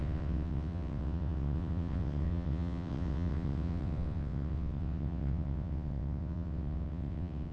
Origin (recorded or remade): remade